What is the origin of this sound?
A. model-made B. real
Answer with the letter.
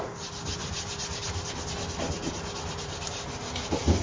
B